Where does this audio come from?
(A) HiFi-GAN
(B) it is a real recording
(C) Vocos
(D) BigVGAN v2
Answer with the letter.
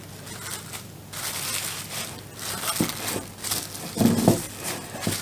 B